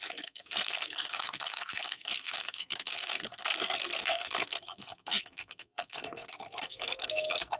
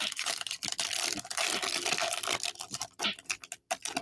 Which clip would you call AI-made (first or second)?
first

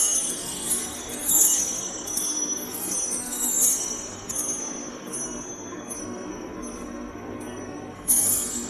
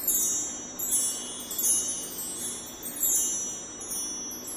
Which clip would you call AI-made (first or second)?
first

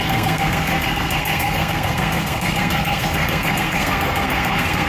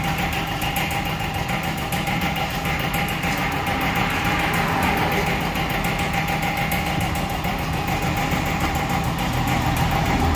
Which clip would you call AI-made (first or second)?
first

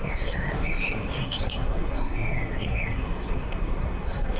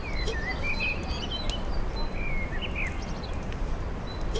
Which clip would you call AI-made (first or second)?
first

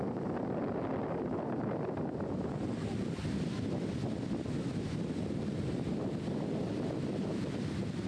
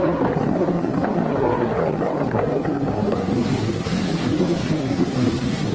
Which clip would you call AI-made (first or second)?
second